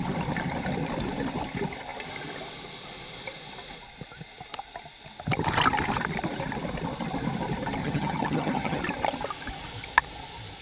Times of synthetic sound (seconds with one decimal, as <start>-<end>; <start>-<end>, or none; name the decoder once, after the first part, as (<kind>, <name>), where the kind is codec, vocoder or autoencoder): 7.8-8.8 (vocoder, HiFi-GAN)